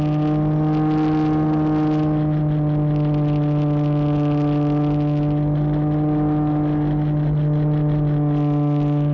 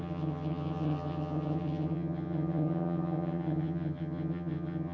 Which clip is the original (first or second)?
first